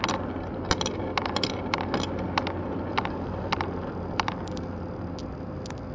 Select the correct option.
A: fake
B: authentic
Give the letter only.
B